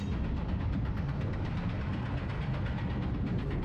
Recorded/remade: recorded